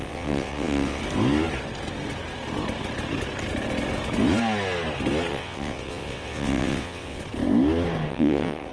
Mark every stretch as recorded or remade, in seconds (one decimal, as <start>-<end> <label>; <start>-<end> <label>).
0.0-1.0 remade; 1.0-5.3 recorded; 5.3-7.2 remade; 7.2-8.1 recorded; 8.1-8.7 remade